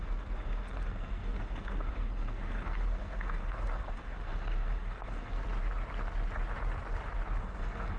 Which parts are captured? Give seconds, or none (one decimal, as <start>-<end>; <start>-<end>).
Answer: 5.4-7.4